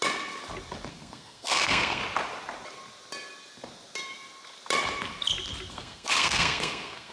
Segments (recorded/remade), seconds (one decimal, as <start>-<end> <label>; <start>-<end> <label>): 0.0-0.9 recorded; 0.9-2.0 remade; 2.0-5.7 recorded; 5.7-7.1 remade